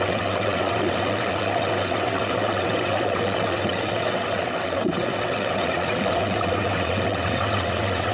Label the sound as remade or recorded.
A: remade